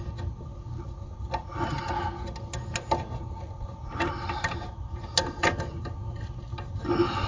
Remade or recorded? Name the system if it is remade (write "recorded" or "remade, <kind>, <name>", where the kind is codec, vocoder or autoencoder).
recorded